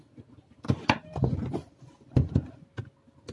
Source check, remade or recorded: recorded